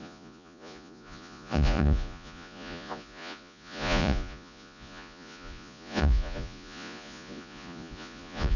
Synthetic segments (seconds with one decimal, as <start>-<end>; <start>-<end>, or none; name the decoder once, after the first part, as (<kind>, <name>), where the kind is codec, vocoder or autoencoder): 0.0-8.6 (vocoder, Vocos)